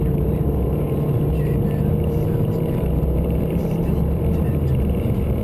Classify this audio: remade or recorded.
remade